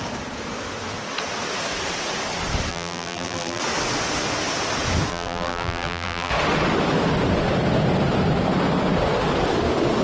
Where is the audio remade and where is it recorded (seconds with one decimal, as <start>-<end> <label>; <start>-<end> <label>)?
0.0-2.7 recorded; 2.7-3.6 remade; 3.6-5.1 recorded; 5.1-6.3 remade; 6.3-10.0 recorded